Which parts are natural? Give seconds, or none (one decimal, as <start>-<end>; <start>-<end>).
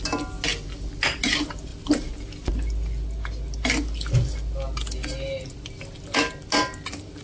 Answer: 0.0-7.2